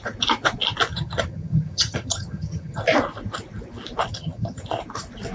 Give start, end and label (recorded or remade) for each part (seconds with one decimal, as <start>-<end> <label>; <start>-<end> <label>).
0.0-0.9 recorded; 0.9-2.8 remade; 2.8-4.1 recorded; 4.1-4.6 remade; 4.6-5.3 recorded

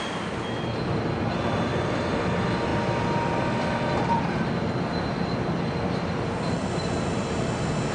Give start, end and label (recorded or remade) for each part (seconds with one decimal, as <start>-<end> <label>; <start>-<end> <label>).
0.0-7.9 recorded

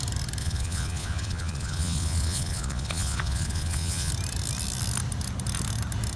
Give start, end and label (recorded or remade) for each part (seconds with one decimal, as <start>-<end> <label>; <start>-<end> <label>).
0.0-0.4 recorded; 0.4-4.1 remade; 4.1-6.2 recorded

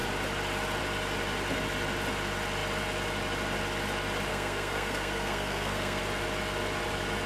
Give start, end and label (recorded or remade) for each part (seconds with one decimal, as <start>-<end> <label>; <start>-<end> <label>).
0.0-4.3 recorded; 4.3-6.0 remade; 6.0-7.3 recorded

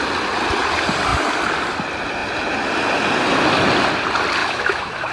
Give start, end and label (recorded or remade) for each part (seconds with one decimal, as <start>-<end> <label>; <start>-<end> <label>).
0.0-4.4 recorded; 4.4-5.1 remade

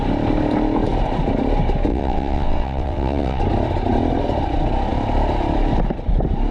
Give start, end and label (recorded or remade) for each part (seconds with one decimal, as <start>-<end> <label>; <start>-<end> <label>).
0.0-1.9 recorded; 1.9-3.4 remade; 3.4-6.5 recorded

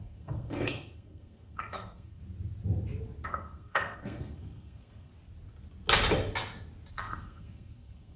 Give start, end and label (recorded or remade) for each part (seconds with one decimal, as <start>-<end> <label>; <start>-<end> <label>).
0.0-2.2 remade; 2.2-3.3 recorded; 3.3-5.1 remade; 5.1-6.9 recorded; 6.9-8.2 remade